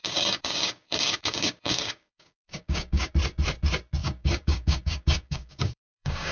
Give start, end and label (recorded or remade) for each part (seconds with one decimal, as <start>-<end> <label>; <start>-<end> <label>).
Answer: 0.0-3.1 remade; 3.1-4.0 recorded; 4.0-6.3 remade